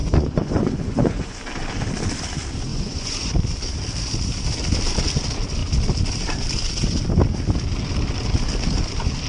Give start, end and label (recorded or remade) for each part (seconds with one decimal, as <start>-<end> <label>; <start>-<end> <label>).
0.0-1.4 remade; 1.4-2.7 recorded; 2.7-3.3 remade; 3.3-9.3 recorded